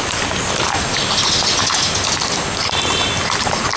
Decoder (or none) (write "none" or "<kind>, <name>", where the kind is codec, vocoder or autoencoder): none